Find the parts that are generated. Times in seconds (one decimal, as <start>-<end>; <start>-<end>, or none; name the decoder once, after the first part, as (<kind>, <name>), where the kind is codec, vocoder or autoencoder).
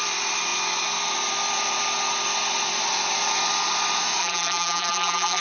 4.2-5.4 (vocoder, BigVGAN v2)